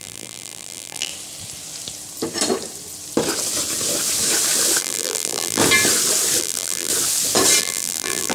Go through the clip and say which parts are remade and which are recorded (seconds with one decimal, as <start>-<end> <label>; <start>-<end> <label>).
0.0-1.1 remade; 1.1-4.8 recorded; 4.8-5.6 remade; 5.6-6.4 recorded; 6.4-6.9 remade; 6.9-7.6 recorded; 7.6-8.3 remade

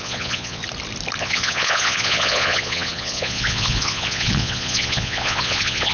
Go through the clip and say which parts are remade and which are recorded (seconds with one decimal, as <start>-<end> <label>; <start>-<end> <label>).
0.0-0.6 remade; 0.6-1.2 recorded; 1.2-5.9 remade

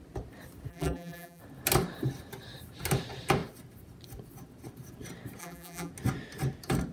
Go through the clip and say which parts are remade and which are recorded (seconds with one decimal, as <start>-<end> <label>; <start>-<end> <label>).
0.0-0.7 recorded; 0.7-1.4 remade; 1.4-5.4 recorded; 5.4-5.9 remade; 5.9-6.9 recorded

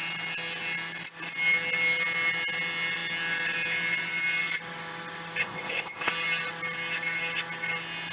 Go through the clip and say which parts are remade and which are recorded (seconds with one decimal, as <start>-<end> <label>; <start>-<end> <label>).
0.0-5.4 recorded; 5.4-6.1 remade; 6.1-8.1 recorded

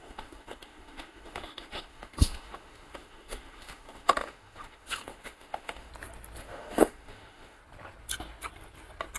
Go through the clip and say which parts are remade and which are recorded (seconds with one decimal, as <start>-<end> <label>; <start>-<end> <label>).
0.0-5.9 remade; 5.9-6.4 recorded; 6.4-7.6 remade; 7.6-9.2 recorded